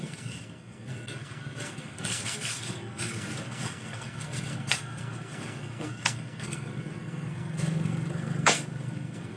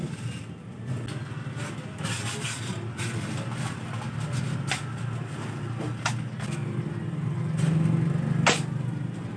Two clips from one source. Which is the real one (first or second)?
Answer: second